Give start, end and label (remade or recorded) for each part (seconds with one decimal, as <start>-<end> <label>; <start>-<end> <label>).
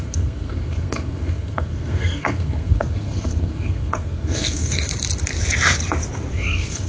0.0-4.9 remade; 4.9-6.3 recorded; 6.3-6.9 remade